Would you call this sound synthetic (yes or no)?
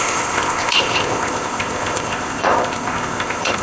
yes